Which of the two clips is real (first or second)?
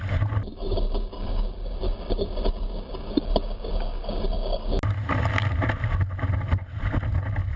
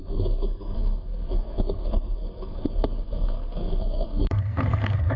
first